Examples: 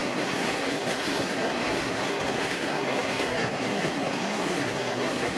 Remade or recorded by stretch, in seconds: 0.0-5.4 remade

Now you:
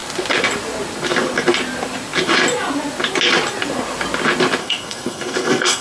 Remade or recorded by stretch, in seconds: 0.0-4.6 recorded; 4.6-5.8 remade

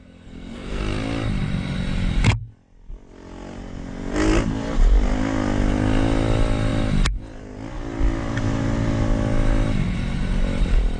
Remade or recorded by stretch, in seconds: 0.0-0.8 remade; 0.8-11.0 recorded